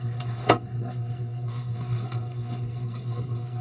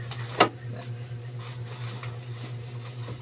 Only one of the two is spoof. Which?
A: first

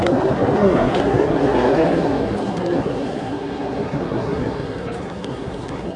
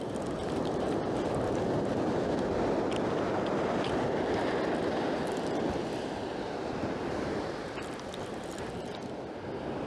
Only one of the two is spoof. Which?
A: first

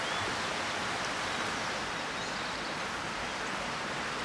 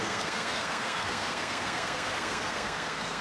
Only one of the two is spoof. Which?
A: second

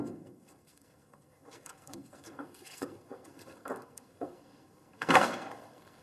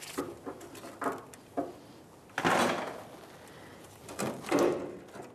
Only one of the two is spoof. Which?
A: first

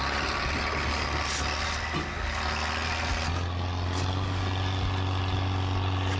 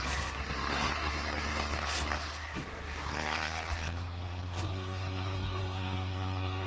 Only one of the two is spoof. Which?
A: second